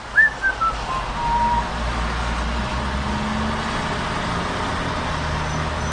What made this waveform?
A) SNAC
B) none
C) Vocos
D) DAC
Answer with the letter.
B